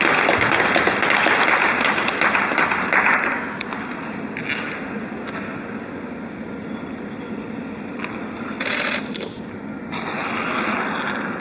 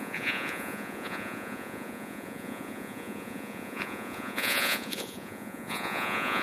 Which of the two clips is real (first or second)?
first